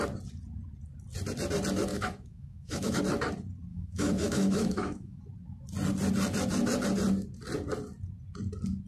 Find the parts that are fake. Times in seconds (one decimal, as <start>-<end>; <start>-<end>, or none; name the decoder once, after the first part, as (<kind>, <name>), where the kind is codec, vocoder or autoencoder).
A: 1.9-3.0 (autoencoder, DAC-VAE); 3.7-5.2